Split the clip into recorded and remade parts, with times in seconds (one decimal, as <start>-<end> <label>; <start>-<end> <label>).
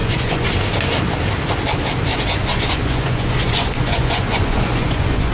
0.0-0.5 remade; 0.5-2.1 recorded; 2.1-5.3 remade